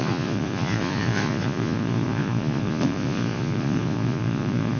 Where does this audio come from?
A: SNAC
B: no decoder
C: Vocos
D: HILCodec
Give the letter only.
C